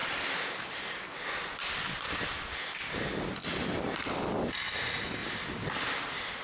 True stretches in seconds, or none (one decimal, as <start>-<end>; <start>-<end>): 0.0-6.4